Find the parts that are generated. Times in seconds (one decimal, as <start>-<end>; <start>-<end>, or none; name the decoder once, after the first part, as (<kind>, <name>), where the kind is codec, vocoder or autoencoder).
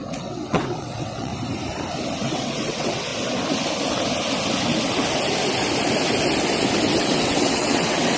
0.0-1.3 (vocoder, WaveNeXt); 2.2-3.1; 7.0-8.2